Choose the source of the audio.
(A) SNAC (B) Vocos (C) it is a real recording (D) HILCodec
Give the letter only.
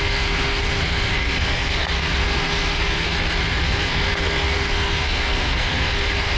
A